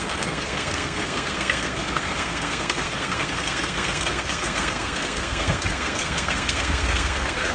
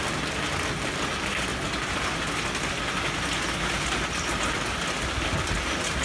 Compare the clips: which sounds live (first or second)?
second